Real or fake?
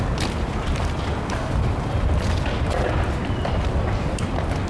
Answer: real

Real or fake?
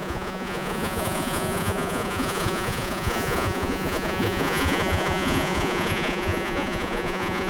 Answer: fake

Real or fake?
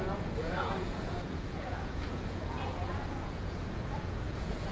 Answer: fake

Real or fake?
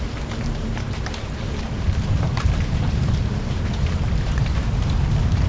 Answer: fake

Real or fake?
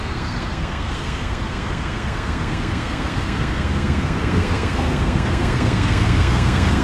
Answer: fake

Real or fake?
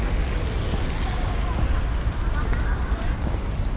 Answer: real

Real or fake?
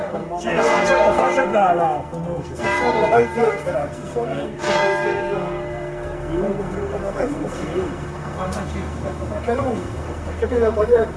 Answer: fake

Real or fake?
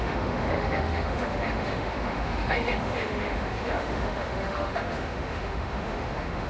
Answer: fake